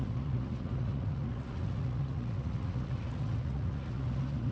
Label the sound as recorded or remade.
remade